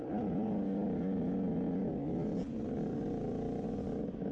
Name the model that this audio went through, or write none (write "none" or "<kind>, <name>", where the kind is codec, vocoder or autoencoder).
none